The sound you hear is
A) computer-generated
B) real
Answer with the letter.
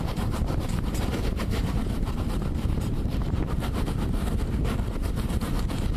A